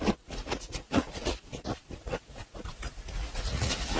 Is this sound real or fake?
fake